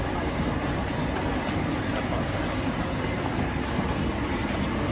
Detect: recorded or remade recorded